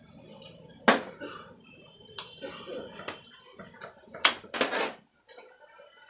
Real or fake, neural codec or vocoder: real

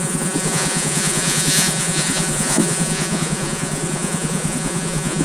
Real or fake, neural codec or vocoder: fake, vocoder, Vocos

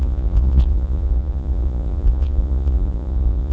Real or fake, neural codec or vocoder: fake, vocoder, Vocos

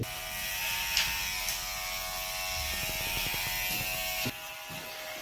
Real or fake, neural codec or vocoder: real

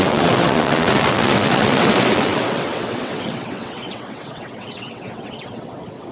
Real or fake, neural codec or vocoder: fake, vocoder, WaveNeXt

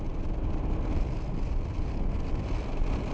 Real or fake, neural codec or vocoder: real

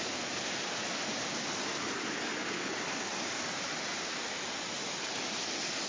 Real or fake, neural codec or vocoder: real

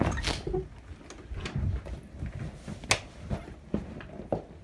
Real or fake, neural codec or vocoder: real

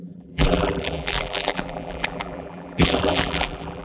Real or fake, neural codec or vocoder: fake, vocoder, BigVGAN v2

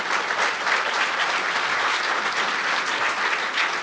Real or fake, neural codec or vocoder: real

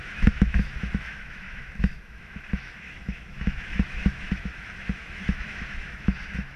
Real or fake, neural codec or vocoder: fake, autoencoder, DAC-VAE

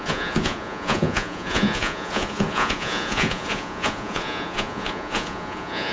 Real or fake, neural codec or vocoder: fake, vocoder, Vocos